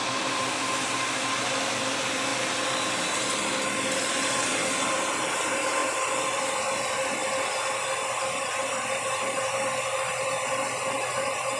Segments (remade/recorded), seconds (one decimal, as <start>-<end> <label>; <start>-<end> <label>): 0.0-11.6 recorded